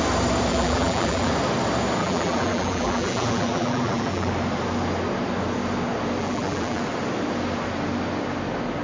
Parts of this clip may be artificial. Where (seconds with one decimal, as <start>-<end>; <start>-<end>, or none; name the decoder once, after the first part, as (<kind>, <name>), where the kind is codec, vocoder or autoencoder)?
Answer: 0.5-1.3 (vocoder, BigVGAN v2); 2.0-4.3; 6.2-6.8